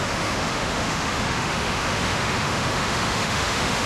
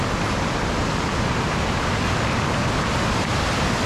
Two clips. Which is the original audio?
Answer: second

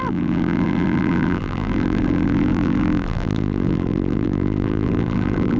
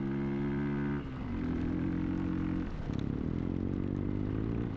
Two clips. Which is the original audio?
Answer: second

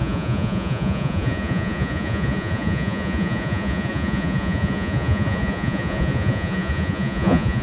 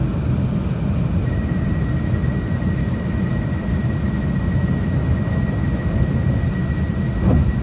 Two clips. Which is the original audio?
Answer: second